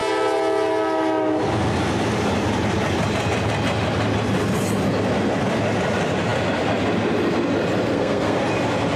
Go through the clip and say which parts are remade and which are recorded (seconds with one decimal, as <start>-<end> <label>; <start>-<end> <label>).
0.0-7.9 recorded; 7.9-8.4 remade; 8.4-9.0 recorded